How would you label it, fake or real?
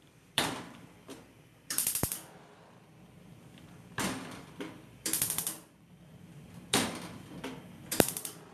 fake